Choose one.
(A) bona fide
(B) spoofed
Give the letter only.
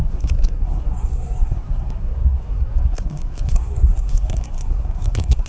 B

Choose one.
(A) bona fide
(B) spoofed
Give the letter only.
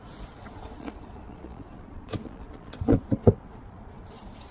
B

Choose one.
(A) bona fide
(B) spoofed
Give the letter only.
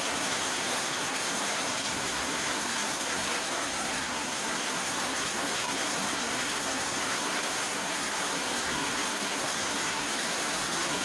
B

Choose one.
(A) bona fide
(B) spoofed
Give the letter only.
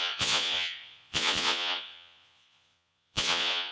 B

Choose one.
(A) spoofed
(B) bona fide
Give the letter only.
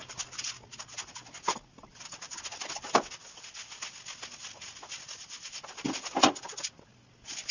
B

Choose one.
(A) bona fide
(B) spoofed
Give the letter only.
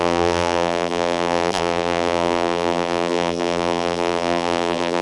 B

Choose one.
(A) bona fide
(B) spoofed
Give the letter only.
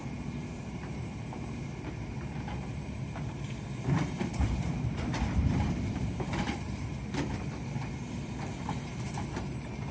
B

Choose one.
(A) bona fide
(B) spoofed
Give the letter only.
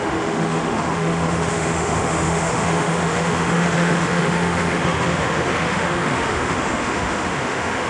B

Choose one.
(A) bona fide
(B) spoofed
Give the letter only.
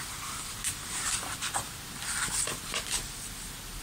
A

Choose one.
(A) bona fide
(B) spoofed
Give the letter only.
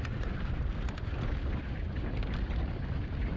A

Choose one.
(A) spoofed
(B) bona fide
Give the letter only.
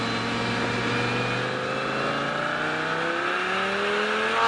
B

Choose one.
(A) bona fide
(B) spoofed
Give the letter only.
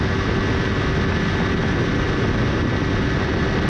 A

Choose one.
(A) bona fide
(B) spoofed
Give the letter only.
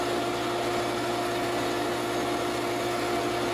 A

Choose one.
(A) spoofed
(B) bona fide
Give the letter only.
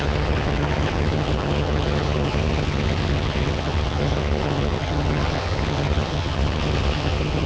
A